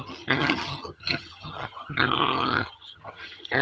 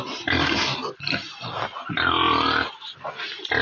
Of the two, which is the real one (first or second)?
second